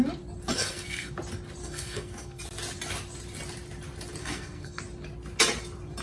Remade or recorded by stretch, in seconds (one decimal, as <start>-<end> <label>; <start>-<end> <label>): 0.0-0.5 recorded; 0.5-1.1 remade; 1.1-1.6 recorded; 1.6-2.4 remade; 2.4-4.2 recorded; 4.2-4.8 remade; 4.8-6.0 recorded